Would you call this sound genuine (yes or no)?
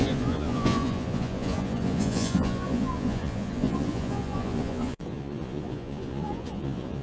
no